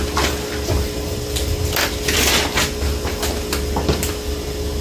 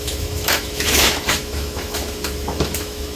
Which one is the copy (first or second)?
second